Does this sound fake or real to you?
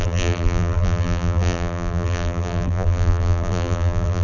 fake